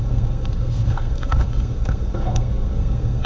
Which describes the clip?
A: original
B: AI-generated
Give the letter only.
B